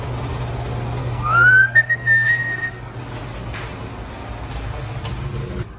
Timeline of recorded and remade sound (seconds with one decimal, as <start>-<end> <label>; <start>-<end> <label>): 0.0-1.0 recorded; 1.0-2.9 remade; 2.9-5.8 recorded